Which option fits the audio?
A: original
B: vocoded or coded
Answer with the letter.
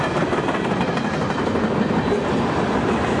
A